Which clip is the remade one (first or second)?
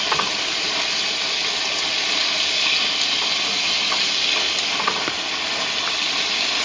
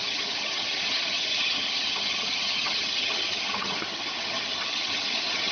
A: second